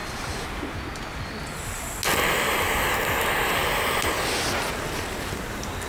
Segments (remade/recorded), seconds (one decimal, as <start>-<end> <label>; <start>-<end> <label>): 0.0-5.9 recorded